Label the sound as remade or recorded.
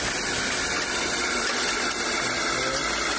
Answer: recorded